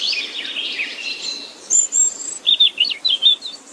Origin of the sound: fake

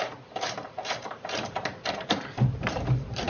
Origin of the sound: fake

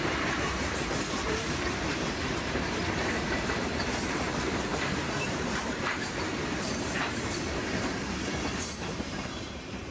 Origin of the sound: fake